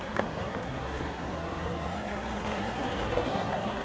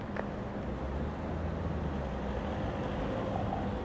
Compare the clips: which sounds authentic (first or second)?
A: second